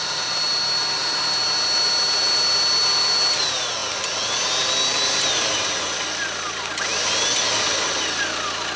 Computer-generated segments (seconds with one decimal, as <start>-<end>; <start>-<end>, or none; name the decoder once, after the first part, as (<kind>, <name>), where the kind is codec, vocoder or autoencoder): none